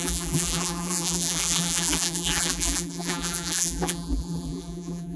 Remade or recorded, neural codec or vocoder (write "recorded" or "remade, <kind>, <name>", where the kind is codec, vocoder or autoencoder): remade, vocoder, BigVGAN v2